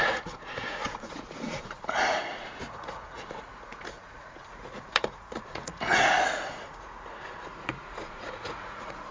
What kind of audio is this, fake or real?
fake